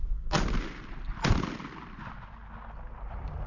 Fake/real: real